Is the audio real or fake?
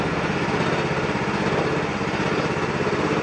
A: real